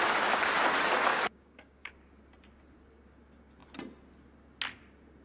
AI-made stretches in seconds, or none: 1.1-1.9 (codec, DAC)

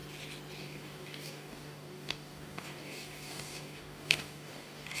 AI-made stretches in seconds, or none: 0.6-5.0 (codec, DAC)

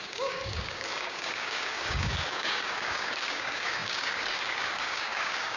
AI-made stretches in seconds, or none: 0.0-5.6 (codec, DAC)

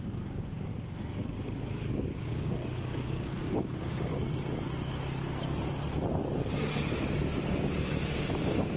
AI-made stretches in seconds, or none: 0.0-0.7 (codec, DAC); 1.9-2.6; 3.1-4.3; 8.1-8.8